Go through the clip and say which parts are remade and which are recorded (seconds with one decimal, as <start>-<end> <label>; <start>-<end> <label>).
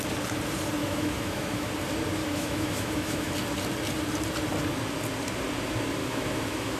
0.0-0.8 recorded; 0.8-1.7 remade; 1.7-2.2 recorded; 2.2-3.3 remade; 3.3-6.0 recorded; 6.0-6.8 remade